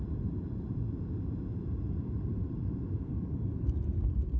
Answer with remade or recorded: remade